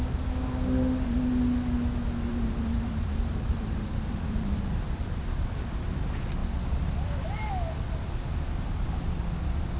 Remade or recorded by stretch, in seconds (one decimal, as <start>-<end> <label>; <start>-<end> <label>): 0.0-2.3 recorded; 2.3-5.7 remade; 5.7-6.4 recorded; 6.4-7.5 remade; 7.5-9.8 recorded